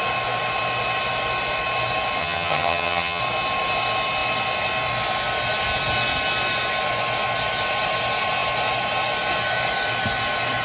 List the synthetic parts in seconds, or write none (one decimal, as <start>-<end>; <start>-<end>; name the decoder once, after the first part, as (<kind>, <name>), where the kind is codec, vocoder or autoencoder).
2.2-3.2 (vocoder, HiFi-GAN)

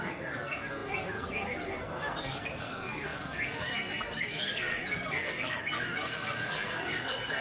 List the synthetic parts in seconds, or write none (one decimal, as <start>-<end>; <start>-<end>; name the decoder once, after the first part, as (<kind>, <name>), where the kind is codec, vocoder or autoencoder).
0.0-7.4 (codec, SNAC)

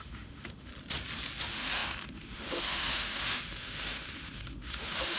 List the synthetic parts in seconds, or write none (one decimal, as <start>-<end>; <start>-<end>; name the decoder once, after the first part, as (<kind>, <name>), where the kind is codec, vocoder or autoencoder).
0.0-0.7 (autoencoder, DAC-VAE); 1.4-5.2